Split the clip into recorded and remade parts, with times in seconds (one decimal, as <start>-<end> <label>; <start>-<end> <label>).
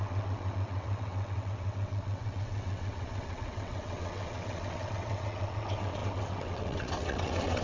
0.0-7.6 remade